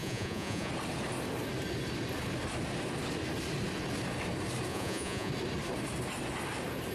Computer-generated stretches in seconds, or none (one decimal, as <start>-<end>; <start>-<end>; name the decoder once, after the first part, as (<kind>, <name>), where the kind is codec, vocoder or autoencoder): 0.0-0.7 (vocoder, Vocos); 4.7-5.3